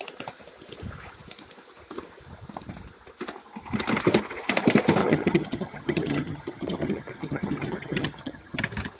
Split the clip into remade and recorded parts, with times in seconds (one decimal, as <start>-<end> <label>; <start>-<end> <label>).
0.0-5.0 recorded; 5.0-8.6 remade; 8.6-9.0 recorded